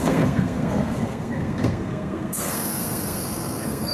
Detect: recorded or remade remade